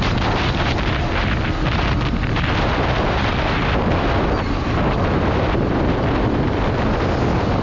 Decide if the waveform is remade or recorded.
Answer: recorded